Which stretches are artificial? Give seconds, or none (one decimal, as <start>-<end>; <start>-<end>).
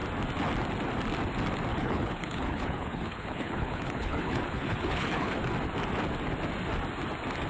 1.7-5.4